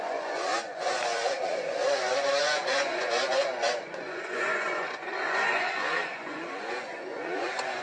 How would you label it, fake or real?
fake